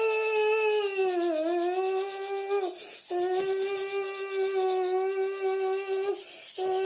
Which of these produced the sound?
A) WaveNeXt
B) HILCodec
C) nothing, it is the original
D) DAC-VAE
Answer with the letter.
C